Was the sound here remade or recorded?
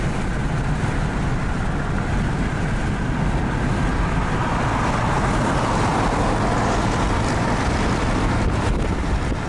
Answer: recorded